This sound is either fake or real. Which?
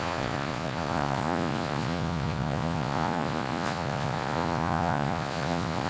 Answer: fake